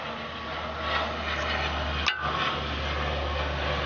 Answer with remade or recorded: recorded